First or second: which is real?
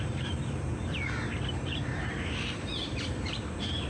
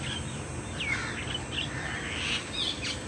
second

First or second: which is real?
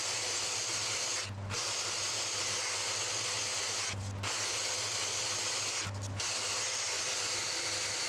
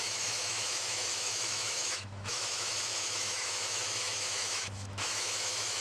first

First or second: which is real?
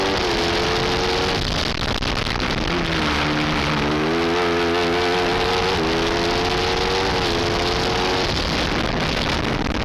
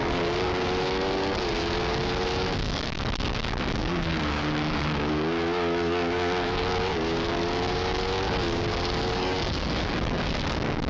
first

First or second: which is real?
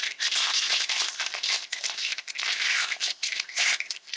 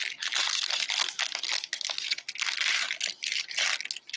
second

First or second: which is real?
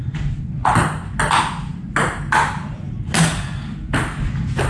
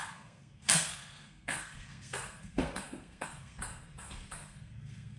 first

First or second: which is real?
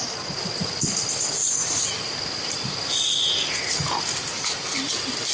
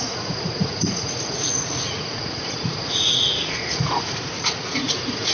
first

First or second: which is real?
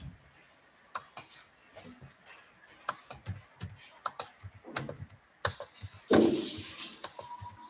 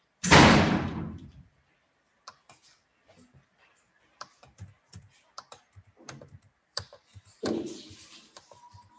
first